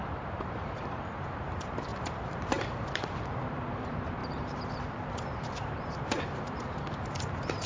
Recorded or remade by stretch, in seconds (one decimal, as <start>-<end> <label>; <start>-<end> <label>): 0.0-7.7 remade